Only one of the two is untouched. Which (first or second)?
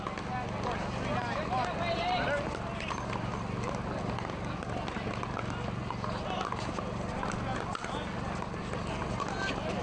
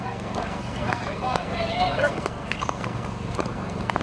first